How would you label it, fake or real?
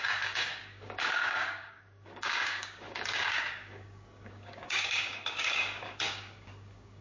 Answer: fake